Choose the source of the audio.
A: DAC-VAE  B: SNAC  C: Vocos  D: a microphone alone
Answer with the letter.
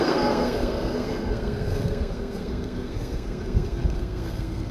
B